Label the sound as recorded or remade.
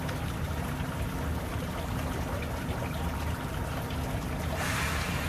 recorded